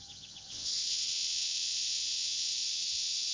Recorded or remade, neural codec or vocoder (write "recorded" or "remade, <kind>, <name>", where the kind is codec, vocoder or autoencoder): remade, vocoder, WaveNeXt